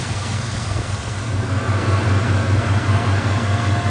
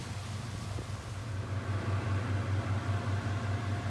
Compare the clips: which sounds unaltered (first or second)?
second